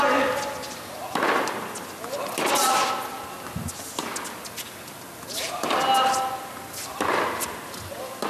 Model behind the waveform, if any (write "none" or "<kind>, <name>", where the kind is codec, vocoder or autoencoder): none